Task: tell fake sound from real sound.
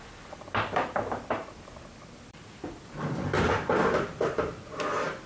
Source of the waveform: fake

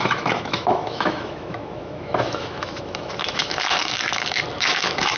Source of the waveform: fake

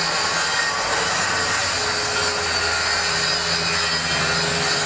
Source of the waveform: real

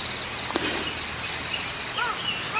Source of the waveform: real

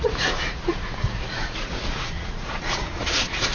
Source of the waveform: fake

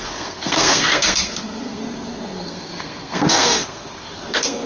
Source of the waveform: fake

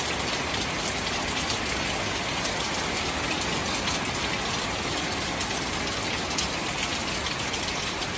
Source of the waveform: real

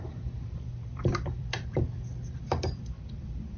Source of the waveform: fake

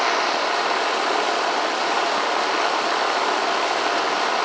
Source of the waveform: real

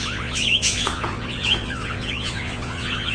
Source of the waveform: fake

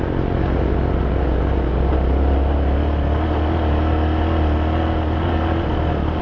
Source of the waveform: real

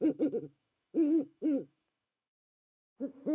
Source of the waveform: fake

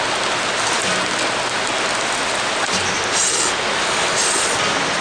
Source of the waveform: real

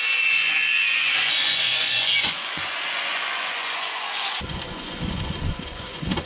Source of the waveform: fake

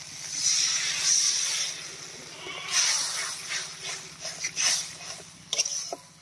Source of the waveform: real